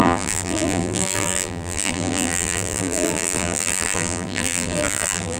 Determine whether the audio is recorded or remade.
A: remade